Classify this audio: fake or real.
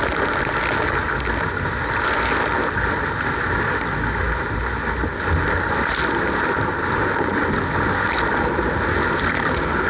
real